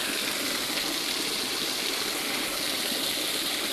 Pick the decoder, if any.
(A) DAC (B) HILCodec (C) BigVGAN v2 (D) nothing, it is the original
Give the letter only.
D